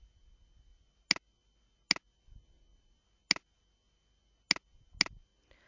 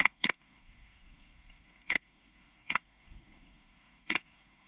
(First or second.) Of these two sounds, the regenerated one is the second